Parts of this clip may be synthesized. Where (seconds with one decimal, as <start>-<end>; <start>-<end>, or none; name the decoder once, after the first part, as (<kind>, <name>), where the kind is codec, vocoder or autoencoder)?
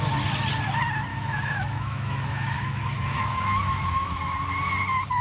1.1-4.2 (autoencoder, DAC-VAE)